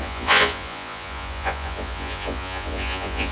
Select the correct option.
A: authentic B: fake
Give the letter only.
B